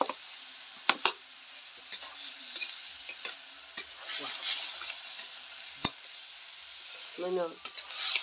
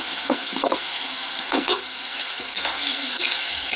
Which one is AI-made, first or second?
second